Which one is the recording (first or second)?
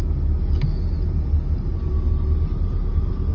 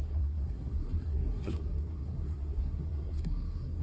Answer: first